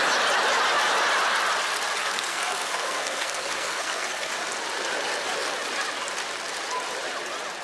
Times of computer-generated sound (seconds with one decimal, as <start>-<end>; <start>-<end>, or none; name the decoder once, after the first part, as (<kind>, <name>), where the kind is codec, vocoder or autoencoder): 2.0-4.3 (codec, SNAC)